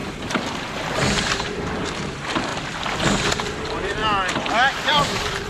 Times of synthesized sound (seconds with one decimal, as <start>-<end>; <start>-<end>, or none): 0.0-2.5; 3.3-4.0; 4.9-5.5